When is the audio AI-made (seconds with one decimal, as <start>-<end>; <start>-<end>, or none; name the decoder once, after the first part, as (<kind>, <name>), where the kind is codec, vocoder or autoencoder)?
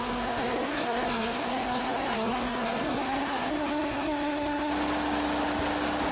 0.0-4.7 (codec, SNAC)